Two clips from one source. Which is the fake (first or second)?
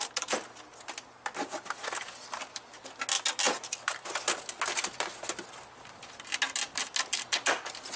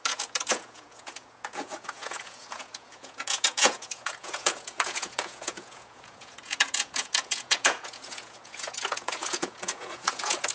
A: second